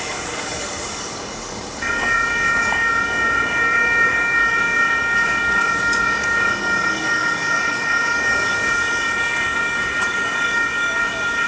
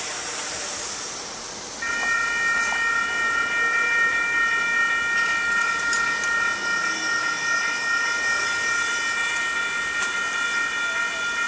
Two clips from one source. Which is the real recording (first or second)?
second